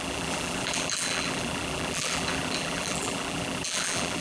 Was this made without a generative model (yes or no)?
no